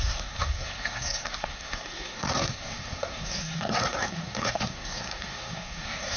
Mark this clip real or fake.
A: fake